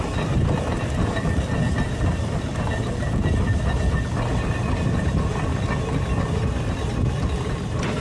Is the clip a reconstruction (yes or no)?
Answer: no